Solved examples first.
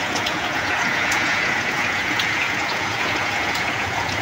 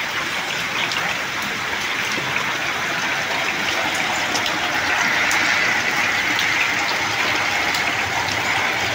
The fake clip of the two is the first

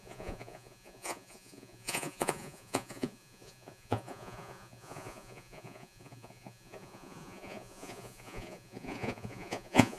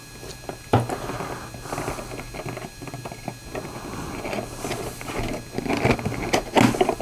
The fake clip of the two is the first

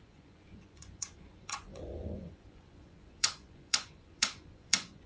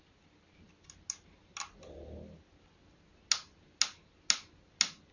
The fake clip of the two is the first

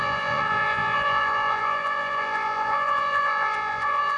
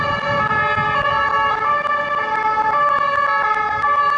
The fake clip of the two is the first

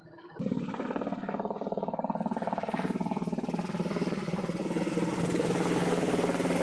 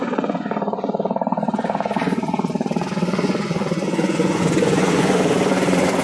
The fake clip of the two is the second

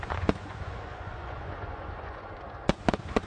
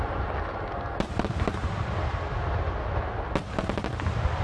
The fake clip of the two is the first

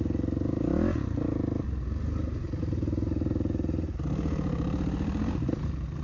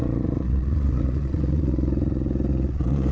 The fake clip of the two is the second